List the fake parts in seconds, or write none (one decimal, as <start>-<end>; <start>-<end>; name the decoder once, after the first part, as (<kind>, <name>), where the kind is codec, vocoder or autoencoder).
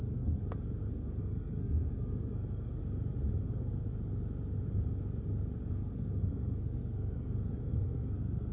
0.0-0.4 (codec, SNAC); 0.9-2.8; 3.4-3.9; 5.7-8.5